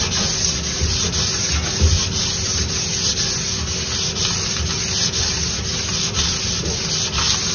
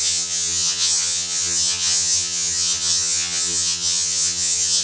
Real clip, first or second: first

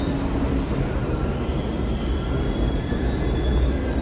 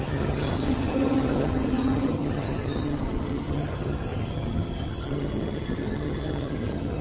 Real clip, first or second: first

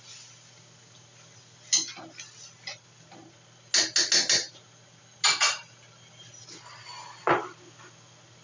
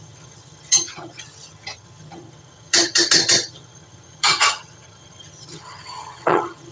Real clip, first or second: first